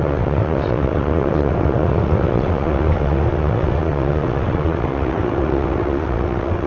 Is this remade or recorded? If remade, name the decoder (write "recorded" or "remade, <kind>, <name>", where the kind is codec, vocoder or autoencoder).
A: remade, vocoder, WaveNeXt